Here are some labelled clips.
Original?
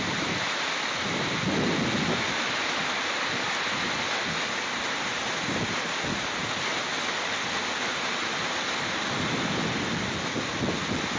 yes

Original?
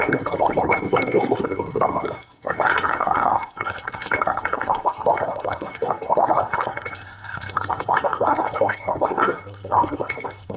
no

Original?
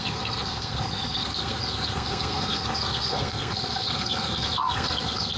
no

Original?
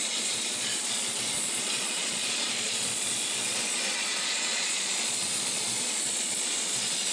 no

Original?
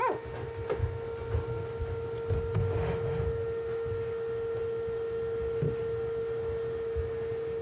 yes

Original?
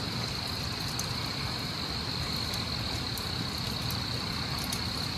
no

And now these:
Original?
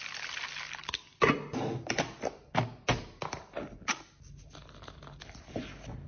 yes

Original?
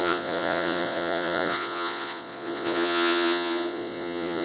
no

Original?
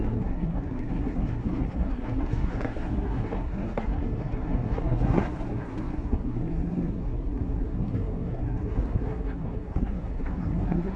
no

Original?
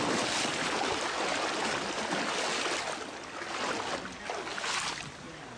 yes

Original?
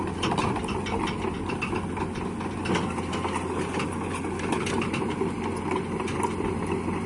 yes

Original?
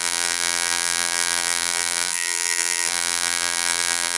no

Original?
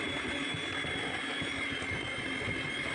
yes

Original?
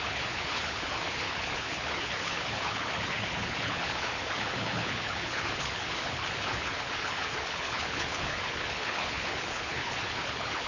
no